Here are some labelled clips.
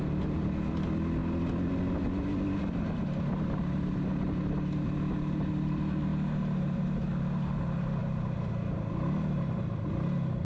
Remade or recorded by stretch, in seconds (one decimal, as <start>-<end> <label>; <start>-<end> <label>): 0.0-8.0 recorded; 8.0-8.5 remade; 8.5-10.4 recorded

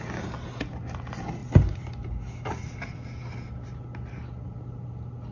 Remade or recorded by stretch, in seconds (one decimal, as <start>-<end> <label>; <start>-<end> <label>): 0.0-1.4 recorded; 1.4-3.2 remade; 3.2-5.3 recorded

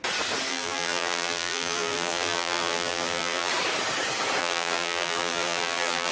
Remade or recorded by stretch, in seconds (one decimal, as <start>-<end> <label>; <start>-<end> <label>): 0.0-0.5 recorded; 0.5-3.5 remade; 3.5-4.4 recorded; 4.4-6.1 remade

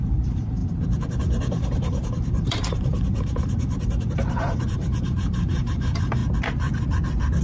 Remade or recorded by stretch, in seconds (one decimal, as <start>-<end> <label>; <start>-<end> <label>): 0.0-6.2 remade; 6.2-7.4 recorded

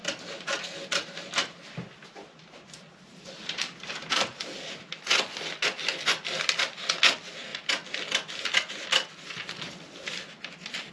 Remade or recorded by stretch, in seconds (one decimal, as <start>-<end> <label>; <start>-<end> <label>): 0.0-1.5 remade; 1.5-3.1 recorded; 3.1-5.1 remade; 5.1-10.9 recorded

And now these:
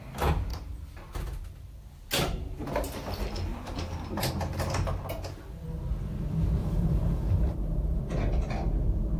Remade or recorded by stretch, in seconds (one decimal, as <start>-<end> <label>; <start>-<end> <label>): 0.0-0.5 recorded; 0.5-1.1 remade; 1.1-3.5 recorded; 3.5-4.3 remade; 4.3-6.6 recorded; 6.6-8.0 remade; 8.0-9.2 recorded

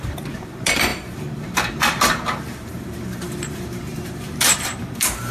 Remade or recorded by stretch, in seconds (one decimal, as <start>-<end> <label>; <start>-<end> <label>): 0.0-5.3 remade